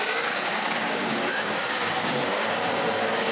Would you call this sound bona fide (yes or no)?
no